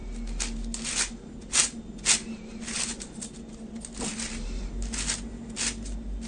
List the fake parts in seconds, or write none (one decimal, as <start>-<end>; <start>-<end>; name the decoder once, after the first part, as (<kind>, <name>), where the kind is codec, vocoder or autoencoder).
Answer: none